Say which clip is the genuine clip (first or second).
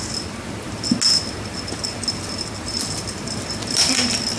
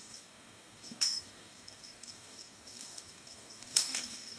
first